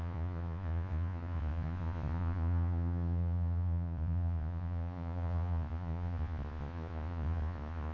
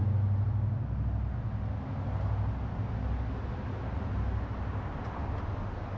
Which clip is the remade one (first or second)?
first